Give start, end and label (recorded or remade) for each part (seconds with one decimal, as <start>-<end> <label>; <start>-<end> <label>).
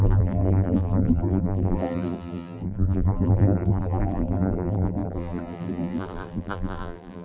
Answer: 0.0-7.2 remade